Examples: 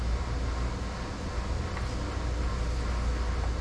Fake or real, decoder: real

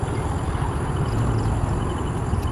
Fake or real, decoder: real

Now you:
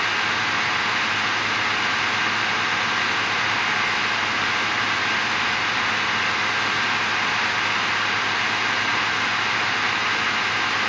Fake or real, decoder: real